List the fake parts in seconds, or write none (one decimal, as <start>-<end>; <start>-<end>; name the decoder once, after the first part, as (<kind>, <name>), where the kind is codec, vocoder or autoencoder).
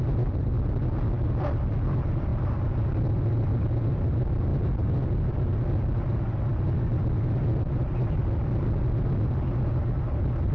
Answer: none